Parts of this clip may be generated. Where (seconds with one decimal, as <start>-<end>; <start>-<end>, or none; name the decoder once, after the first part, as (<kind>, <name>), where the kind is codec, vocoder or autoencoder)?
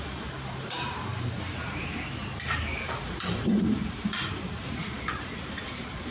0.0-6.1 (vocoder, BigVGAN v2)